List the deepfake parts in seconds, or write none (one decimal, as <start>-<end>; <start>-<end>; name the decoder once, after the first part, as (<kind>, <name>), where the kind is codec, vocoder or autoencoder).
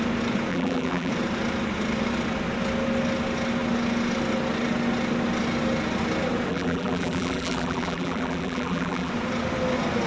0.5-1.1 (vocoder, BigVGAN v2); 6.5-9.1